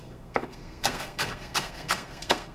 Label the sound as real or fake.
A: fake